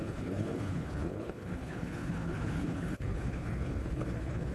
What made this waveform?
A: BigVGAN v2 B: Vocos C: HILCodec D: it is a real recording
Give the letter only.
C